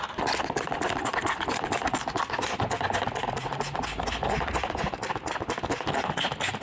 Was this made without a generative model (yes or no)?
yes